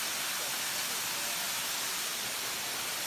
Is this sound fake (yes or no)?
yes